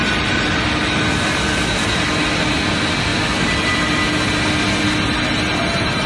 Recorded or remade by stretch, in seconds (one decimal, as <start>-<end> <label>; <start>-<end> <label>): 0.0-6.1 recorded

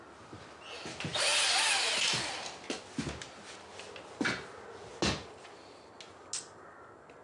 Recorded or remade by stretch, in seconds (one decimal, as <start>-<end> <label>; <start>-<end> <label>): 0.0-7.2 recorded

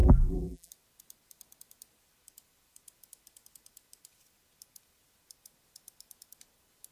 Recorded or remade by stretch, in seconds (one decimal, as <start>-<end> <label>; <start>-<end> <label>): 0.0-0.7 remade; 0.7-6.9 recorded

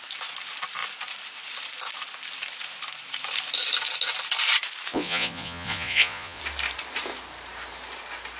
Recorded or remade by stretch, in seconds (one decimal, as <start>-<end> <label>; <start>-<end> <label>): 0.0-4.9 recorded; 4.9-6.4 remade; 6.4-8.4 recorded

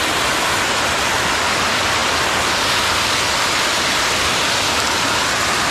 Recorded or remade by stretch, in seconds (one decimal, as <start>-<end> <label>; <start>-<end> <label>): 0.0-5.7 recorded